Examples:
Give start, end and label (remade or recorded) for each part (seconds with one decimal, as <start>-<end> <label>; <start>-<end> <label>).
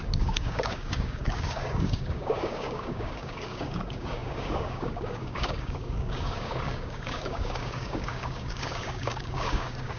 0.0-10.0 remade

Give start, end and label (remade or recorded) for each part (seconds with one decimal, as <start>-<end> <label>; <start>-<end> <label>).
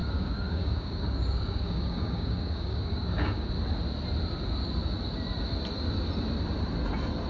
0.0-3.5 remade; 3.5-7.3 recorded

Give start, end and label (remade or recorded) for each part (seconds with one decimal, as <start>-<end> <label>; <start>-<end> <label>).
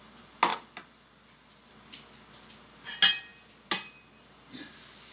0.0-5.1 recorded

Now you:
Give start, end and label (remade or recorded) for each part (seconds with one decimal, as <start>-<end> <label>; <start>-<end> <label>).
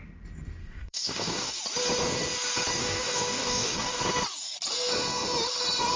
0.0-0.6 recorded; 0.6-1.6 remade; 1.6-2.8 recorded; 2.8-4.0 remade; 4.0-6.0 recorded